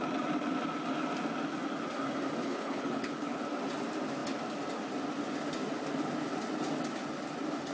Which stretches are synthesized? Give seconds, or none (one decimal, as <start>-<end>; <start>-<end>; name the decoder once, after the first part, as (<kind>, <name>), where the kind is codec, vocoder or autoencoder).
2.4-3.4 (codec, HILCodec)